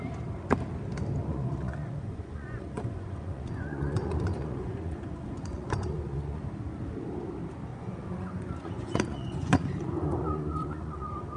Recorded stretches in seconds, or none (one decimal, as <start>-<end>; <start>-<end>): 0.0-1.2; 6.4-7.7